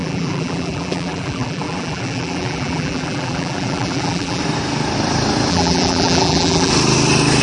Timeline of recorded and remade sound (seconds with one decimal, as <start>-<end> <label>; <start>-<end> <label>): 0.0-4.4 remade; 4.4-5.5 recorded; 5.5-6.7 remade; 6.7-7.4 recorded

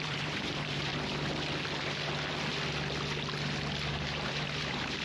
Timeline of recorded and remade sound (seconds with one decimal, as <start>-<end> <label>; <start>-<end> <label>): 0.0-0.9 remade; 0.9-3.9 recorded; 3.9-5.0 remade

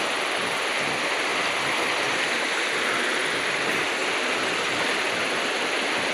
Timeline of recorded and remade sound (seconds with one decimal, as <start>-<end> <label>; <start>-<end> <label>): 0.0-6.1 recorded

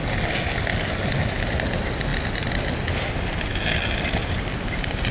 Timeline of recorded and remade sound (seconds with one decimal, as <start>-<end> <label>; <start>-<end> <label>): 0.0-4.2 recorded; 4.2-5.1 remade

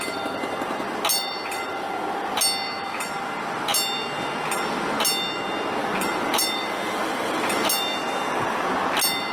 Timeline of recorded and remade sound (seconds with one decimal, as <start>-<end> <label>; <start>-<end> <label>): 0.0-1.1 recorded; 1.1-2.4 remade; 2.4-5.8 recorded; 5.8-7.4 remade; 7.4-9.3 recorded

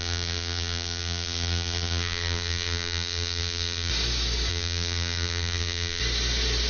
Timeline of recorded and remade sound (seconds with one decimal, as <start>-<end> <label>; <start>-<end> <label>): 0.0-3.9 remade; 3.9-4.5 recorded; 4.5-6.0 remade; 6.0-6.7 recorded